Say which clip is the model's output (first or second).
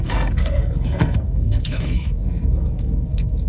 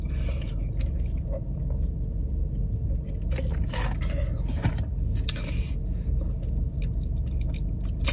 first